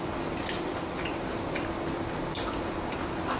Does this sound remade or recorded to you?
remade